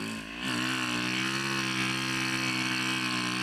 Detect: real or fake real